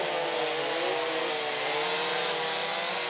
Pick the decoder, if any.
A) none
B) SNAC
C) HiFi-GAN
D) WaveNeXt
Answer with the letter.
A